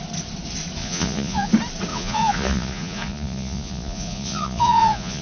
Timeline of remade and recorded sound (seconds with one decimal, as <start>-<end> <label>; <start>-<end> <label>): 0.0-0.8 recorded; 0.8-1.5 remade; 1.5-1.9 recorded; 1.9-5.2 remade